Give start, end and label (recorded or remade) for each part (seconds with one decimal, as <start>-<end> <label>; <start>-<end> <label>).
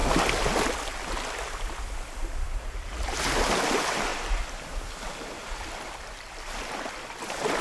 0.0-4.1 recorded; 4.1-6.7 remade; 6.7-7.6 recorded